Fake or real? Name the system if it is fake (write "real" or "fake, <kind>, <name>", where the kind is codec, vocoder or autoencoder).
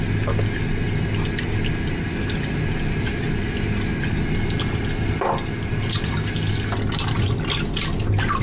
real